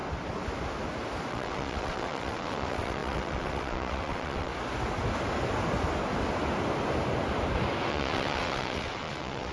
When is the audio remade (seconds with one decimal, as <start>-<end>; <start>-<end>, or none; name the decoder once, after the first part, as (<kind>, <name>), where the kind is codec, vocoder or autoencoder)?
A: 1.3-4.5 (vocoder, WaveNeXt); 7.9-9.5